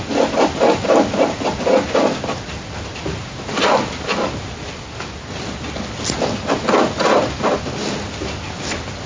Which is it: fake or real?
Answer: real